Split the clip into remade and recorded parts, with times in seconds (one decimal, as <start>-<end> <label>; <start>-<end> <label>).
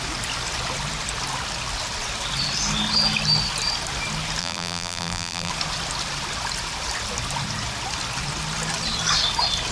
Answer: 0.0-4.4 recorded; 4.4-5.5 remade; 5.5-9.7 recorded